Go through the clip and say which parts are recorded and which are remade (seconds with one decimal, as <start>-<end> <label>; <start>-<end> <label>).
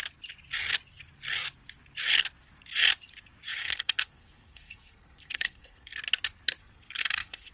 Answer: 0.0-3.6 recorded; 3.6-6.0 remade; 6.0-6.6 recorded; 6.6-7.5 remade